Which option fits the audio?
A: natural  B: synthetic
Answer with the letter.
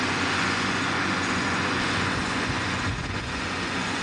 B